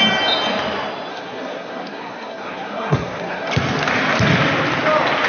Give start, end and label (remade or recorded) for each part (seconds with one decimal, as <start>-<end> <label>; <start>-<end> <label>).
0.0-1.1 recorded; 1.1-3.5 remade; 3.5-5.3 recorded